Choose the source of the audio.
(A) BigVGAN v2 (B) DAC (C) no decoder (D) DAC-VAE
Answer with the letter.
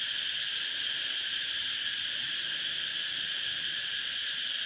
A